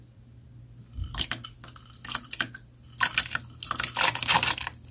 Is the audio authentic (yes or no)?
yes